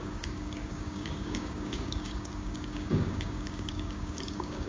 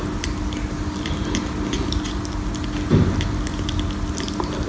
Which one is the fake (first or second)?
first